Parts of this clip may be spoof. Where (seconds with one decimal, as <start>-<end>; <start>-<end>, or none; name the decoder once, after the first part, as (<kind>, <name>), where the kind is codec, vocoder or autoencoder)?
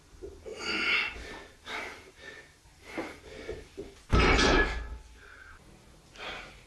0.5-1.3 (vocoder, BigVGAN v2); 2.7-4.4